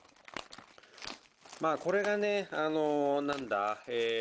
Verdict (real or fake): real